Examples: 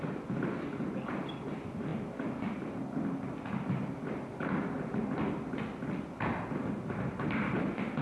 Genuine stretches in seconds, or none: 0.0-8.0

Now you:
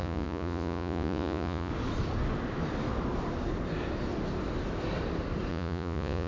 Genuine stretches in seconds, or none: 1.7-5.5

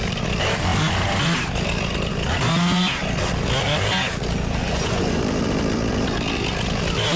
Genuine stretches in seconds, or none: 0.0-4.6; 5.2-7.2

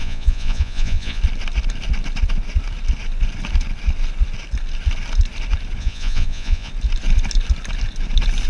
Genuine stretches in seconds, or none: 1.2-5.8; 6.7-8.5

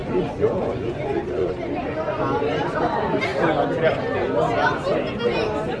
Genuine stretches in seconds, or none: 1.5-5.8